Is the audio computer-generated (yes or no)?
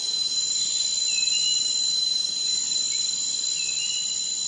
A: no